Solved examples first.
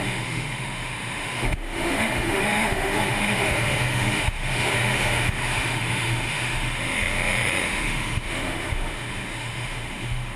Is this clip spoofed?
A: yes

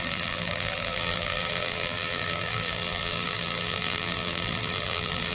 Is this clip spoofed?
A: yes